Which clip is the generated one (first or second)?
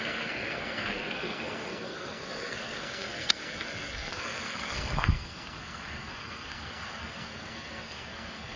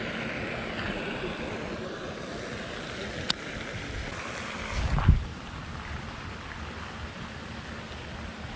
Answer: first